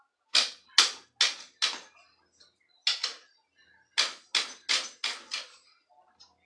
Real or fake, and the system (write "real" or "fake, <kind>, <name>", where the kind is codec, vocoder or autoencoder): real